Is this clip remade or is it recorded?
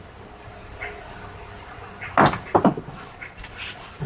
recorded